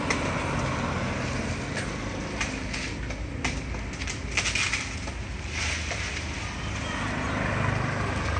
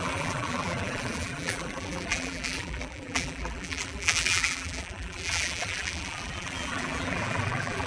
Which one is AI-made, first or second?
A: second